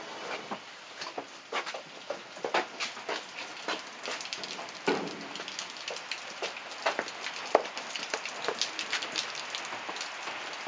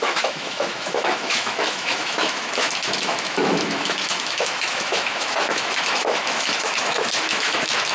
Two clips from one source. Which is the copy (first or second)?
second